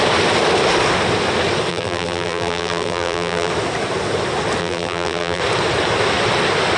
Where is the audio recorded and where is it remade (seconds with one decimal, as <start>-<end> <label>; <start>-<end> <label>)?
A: 0.0-1.7 recorded; 1.7-3.5 remade; 3.5-4.6 recorded; 4.6-5.4 remade; 5.4-6.8 recorded